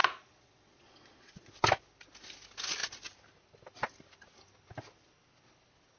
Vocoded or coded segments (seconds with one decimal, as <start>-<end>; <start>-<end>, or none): 0.0-1.5